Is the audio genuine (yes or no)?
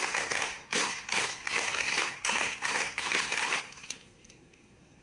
no